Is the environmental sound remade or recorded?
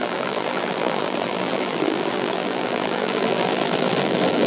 remade